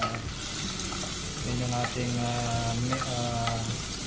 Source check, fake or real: real